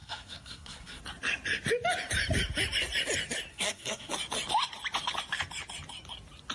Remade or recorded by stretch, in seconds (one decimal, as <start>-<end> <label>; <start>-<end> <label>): 0.0-1.0 remade; 1.0-3.5 recorded; 3.5-4.1 remade; 4.1-6.5 recorded